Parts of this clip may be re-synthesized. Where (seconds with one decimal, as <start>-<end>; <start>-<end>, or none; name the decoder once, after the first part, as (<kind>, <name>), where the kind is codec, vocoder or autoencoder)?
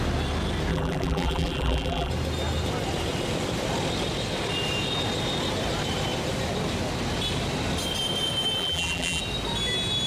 0.7-2.1 (vocoder, BigVGAN v2); 8.6-9.2